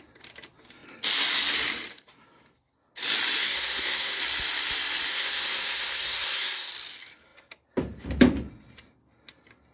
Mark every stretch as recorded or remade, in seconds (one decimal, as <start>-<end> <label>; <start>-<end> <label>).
0.0-3.4 recorded; 3.4-4.2 remade; 4.2-5.1 recorded; 5.1-6.7 remade; 6.7-9.7 recorded